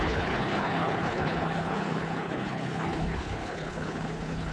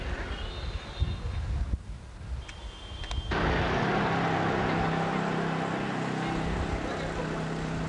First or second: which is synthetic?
first